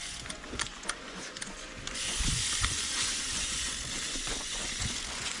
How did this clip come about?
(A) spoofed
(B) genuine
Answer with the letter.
A